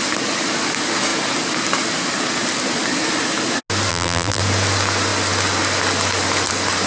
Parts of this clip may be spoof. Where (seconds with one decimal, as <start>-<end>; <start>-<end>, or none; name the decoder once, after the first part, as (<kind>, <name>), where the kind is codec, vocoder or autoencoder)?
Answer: 3.9-4.4 (vocoder, BigVGAN v2)